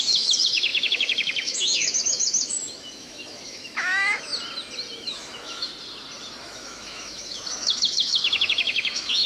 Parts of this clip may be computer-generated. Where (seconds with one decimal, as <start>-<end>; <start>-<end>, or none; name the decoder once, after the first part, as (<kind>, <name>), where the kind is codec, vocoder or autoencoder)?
0.0-4.3 (autoencoder, DAC-VAE); 5.0-5.7; 6.4-9.3